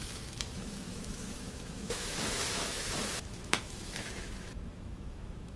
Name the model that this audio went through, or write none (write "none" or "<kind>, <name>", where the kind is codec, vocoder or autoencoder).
autoencoder, DAC-VAE